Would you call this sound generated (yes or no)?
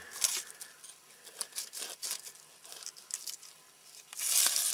no